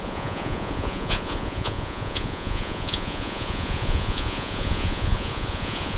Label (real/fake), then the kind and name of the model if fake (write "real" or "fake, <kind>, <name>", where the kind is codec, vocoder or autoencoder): fake, vocoder, Vocos